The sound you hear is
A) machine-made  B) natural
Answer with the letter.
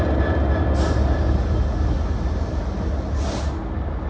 B